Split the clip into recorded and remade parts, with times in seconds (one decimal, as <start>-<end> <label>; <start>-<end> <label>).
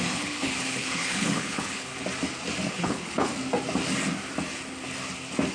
0.0-1.9 remade; 1.9-2.7 recorded; 2.7-3.3 remade; 3.3-5.5 recorded